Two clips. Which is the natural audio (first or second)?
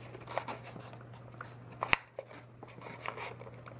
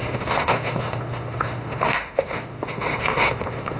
first